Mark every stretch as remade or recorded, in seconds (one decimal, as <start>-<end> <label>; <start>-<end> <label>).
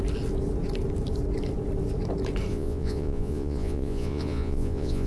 0.0-2.5 recorded; 2.5-5.1 remade